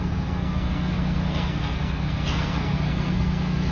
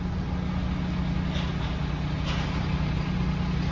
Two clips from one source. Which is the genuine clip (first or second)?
second